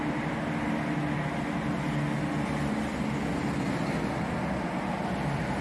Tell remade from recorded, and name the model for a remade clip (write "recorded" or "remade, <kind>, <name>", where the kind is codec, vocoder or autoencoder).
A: recorded